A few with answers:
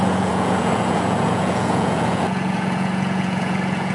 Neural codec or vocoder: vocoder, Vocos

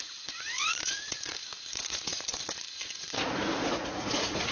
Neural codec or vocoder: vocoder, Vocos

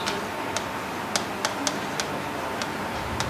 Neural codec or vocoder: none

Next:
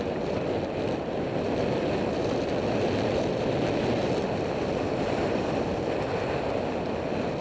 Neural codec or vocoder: none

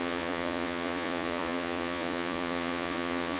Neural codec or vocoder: vocoder, Vocos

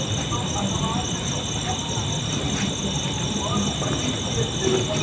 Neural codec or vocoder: none